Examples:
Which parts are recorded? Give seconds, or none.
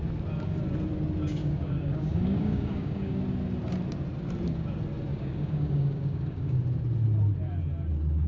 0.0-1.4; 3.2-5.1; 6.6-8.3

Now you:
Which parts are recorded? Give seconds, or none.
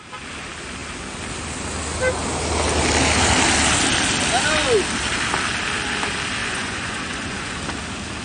0.0-6.4; 7.6-8.2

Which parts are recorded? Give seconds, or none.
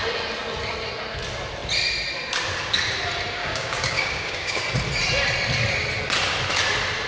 0.0-3.4; 4.6-7.1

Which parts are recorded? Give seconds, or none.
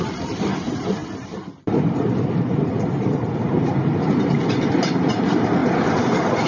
none